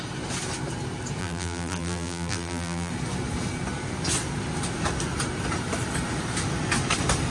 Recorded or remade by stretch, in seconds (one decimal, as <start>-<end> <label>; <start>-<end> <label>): 0.0-1.2 recorded; 1.2-2.9 remade; 2.9-7.3 recorded